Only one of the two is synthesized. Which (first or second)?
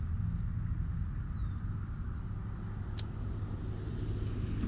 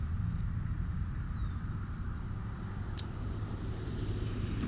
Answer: second